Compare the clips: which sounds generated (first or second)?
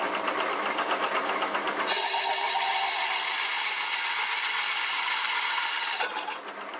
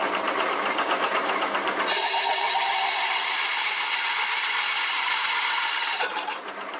second